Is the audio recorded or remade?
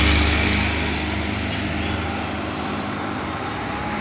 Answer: recorded